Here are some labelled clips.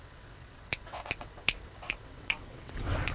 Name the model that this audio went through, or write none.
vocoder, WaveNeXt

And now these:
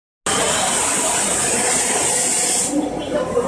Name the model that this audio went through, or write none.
none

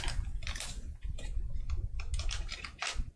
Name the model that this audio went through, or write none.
none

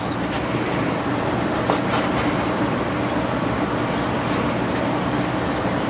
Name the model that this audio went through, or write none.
none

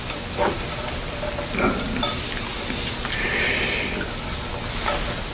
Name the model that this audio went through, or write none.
none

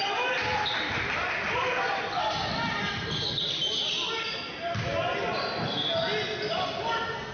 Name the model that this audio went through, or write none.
none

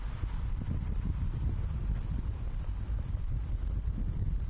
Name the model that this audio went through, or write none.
none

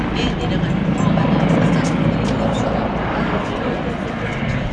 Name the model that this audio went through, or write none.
none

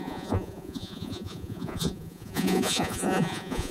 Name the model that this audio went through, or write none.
vocoder, Vocos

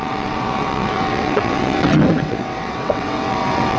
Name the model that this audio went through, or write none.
vocoder, WaveNeXt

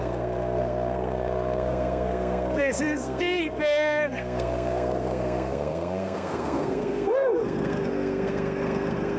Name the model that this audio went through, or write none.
codec, SNAC